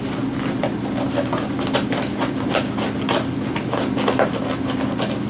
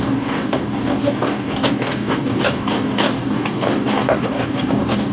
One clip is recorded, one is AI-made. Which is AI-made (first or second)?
second